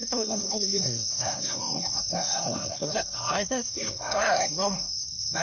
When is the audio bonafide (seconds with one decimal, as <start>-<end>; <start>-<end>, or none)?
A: none

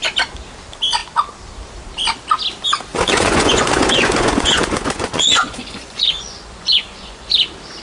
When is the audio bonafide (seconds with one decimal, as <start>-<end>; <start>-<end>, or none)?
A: 0.0-2.9; 7.3-7.8